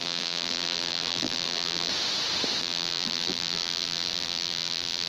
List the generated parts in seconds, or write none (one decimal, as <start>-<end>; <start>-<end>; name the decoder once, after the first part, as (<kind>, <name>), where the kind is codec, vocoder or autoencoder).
0.0-1.9 (vocoder, BigVGAN v2); 2.6-5.1